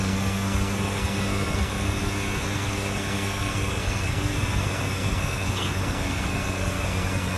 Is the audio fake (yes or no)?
yes